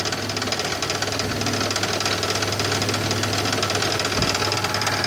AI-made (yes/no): no